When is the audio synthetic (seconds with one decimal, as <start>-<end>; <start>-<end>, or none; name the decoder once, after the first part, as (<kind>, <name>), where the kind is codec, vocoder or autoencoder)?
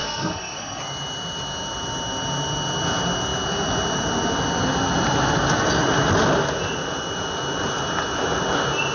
0.0-0.8 (codec, SNAC)